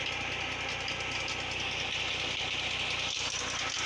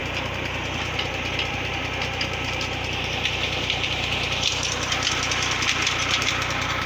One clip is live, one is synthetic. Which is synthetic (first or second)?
second